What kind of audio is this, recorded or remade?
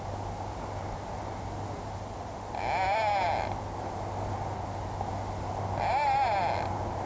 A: recorded